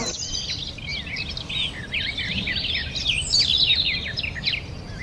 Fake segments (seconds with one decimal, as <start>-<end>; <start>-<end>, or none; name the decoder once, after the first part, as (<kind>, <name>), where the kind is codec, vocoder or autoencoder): none